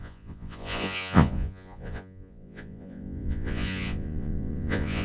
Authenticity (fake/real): fake